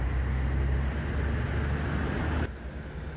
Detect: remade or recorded recorded